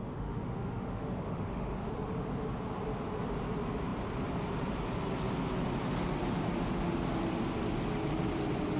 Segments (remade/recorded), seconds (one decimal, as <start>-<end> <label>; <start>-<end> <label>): 0.0-1.9 remade; 1.9-8.8 recorded